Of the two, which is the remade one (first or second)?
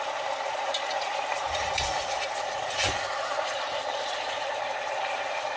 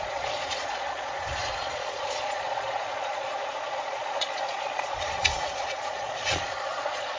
second